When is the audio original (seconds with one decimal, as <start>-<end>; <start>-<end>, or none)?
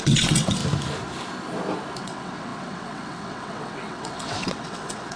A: 0.6-2.0